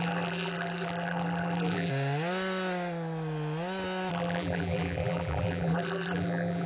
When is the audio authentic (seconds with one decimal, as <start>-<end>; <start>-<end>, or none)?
1.9-4.1

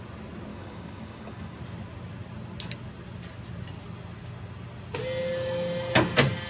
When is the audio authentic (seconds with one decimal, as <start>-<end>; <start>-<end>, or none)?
0.0-0.5; 1.6-6.5

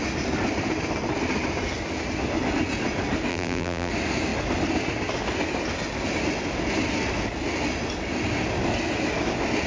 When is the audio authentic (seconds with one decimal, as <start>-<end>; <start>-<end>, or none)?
0.0-3.3; 3.9-9.7